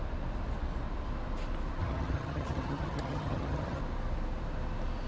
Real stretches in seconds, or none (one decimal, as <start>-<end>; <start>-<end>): 0.0-1.8; 3.8-5.1